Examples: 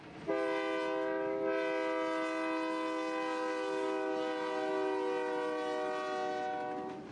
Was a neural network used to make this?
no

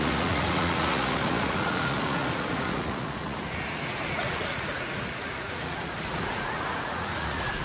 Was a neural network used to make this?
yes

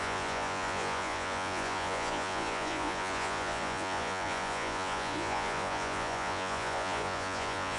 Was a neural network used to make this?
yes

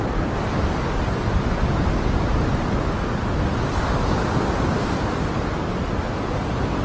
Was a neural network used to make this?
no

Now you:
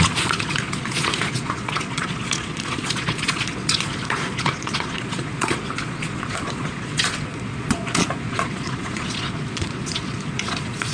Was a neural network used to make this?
yes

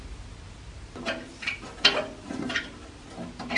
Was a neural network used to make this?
no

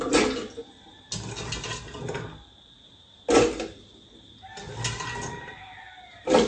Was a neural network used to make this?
no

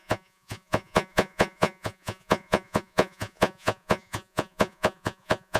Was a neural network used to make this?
yes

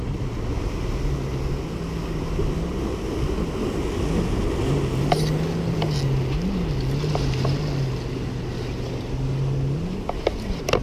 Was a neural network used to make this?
no